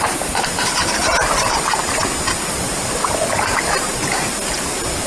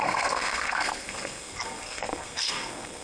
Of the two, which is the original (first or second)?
first